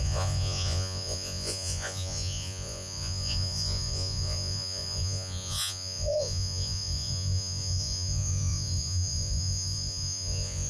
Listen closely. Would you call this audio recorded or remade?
remade